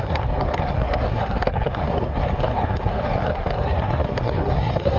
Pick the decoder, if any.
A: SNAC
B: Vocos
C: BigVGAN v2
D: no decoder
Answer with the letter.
A